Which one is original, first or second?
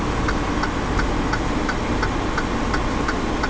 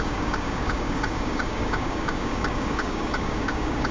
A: first